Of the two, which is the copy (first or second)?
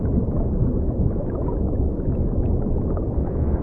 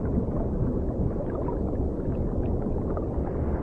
first